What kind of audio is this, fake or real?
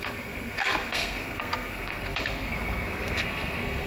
fake